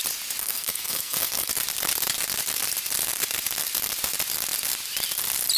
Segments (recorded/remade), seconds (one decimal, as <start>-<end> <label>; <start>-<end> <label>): 0.0-0.4 recorded; 0.4-1.5 remade; 1.5-5.6 recorded

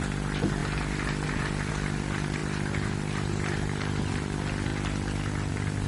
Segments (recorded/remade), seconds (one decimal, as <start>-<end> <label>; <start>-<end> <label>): 0.0-2.4 recorded; 2.4-4.1 remade; 4.1-5.9 recorded

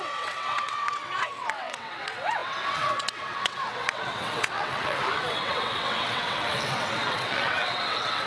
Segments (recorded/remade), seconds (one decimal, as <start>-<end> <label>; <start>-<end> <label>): 0.0-8.3 remade

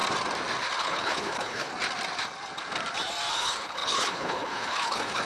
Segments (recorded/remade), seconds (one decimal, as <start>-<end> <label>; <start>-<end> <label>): 0.0-0.8 recorded; 0.8-1.7 remade; 1.7-3.3 recorded; 3.3-5.2 remade

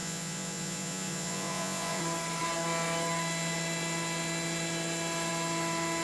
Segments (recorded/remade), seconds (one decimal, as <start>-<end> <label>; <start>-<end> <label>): 0.0-2.0 remade; 2.0-6.0 recorded

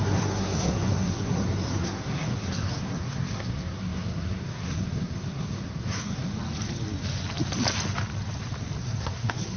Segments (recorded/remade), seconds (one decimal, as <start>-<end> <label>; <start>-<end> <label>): 0.0-6.3 remade; 6.3-8.8 recorded; 8.8-9.6 remade

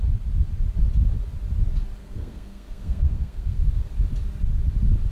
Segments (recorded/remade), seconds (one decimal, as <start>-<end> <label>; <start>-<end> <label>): 0.0-2.0 recorded; 2.0-3.8 remade; 3.8-5.1 recorded

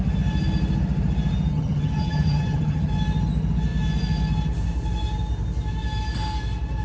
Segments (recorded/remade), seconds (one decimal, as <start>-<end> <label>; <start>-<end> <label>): 0.0-1.5 recorded; 1.5-2.9 remade; 2.9-6.8 recorded